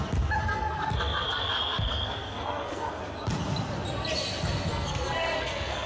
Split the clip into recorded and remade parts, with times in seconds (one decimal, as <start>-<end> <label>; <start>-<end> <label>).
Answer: 0.0-0.4 recorded; 0.4-3.0 remade; 3.0-4.7 recorded; 4.7-5.9 remade